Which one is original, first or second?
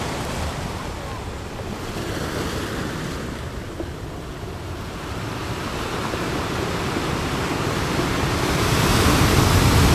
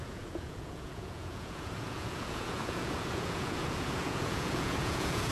first